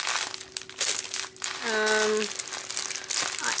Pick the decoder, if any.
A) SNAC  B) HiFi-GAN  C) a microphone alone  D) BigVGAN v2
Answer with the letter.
C